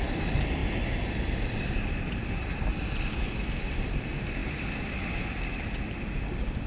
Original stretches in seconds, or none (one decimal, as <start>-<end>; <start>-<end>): 0.0-6.7